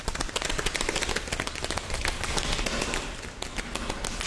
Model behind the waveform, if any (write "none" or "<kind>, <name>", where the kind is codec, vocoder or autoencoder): none